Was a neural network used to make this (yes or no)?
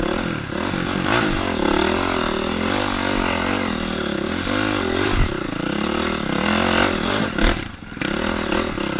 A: no